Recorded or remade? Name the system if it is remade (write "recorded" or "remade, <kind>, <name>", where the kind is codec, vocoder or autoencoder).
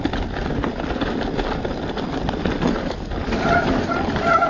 recorded